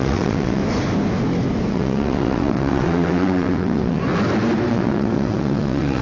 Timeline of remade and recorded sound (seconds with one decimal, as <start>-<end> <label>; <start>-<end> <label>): 0.0-0.6 remade; 0.6-1.7 recorded; 1.7-4.0 remade; 4.0-4.7 recorded; 4.7-6.0 remade

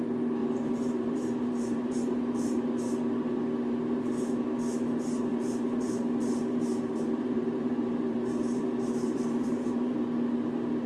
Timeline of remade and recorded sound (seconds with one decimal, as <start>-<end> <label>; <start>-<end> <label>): 0.0-0.4 recorded; 0.4-2.7 remade; 2.7-5.3 recorded; 5.3-9.9 remade; 9.9-10.9 recorded

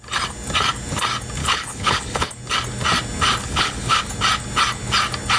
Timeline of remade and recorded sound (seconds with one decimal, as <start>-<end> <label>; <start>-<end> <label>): 0.0-1.4 recorded; 1.4-2.3 remade; 2.3-3.4 recorded; 3.4-4.0 remade; 4.0-5.4 recorded

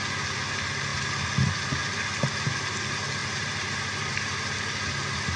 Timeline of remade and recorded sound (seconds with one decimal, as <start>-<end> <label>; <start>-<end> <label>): 0.0-3.2 recorded; 3.2-4.6 remade; 4.6-5.4 recorded

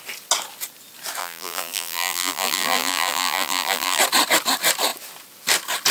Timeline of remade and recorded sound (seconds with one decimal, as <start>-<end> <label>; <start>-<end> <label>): 0.0-1.2 recorded; 1.2-4.0 remade; 4.0-5.9 recorded